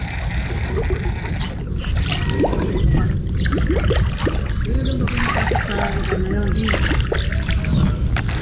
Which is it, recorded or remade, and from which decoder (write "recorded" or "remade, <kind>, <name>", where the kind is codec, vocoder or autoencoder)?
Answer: recorded